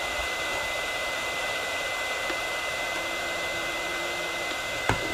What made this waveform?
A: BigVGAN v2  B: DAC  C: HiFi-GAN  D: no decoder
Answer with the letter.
A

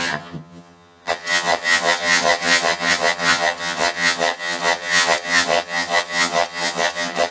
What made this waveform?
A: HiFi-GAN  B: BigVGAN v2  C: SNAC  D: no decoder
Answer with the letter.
A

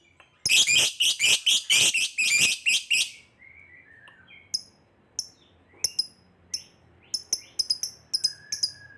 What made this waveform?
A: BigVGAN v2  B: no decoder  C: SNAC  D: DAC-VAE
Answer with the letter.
B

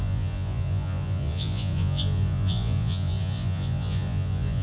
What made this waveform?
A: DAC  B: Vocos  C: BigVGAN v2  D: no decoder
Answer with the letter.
B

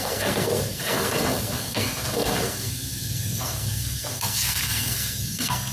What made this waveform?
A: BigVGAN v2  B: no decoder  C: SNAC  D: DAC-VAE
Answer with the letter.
C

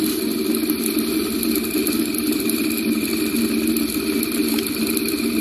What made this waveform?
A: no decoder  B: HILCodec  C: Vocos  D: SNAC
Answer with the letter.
A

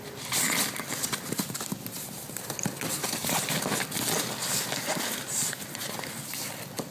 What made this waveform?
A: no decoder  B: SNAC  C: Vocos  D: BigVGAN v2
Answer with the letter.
A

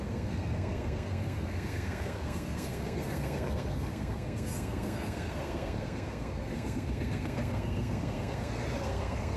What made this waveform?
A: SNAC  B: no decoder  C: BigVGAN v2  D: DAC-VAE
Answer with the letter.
A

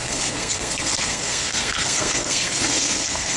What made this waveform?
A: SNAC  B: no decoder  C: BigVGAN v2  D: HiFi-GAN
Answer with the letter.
A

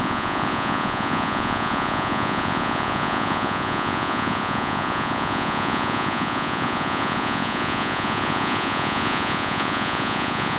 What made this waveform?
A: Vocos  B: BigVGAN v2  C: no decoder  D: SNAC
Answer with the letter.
A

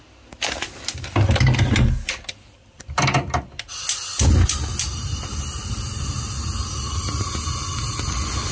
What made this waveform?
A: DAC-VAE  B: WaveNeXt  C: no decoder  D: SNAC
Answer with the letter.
C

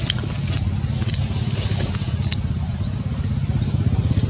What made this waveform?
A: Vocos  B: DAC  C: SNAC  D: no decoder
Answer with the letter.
D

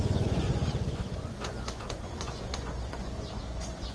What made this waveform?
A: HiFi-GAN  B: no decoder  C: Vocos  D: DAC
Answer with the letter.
C